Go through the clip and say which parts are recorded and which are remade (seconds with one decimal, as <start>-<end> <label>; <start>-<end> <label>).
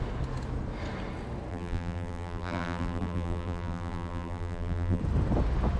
0.0-1.5 recorded; 1.5-5.0 remade; 5.0-5.8 recorded